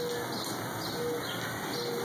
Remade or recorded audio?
recorded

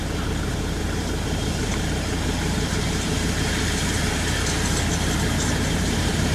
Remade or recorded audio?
remade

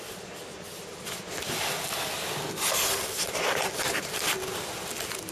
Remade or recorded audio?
recorded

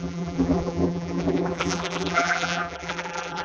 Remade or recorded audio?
remade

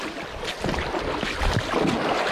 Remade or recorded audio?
recorded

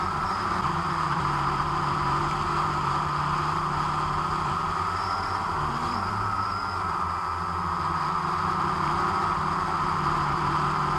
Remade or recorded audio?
recorded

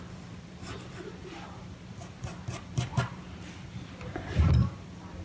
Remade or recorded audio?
remade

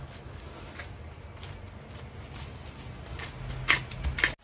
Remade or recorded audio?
recorded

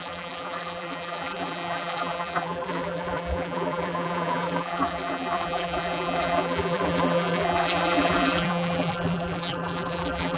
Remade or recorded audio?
remade